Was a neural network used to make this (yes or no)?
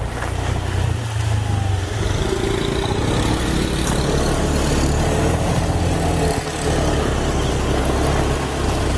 no